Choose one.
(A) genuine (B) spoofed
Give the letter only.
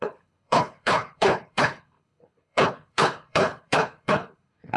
B